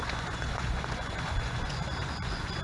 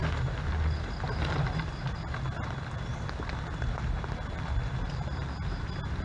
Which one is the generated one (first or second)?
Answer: first